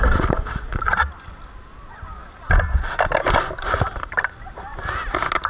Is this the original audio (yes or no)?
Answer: yes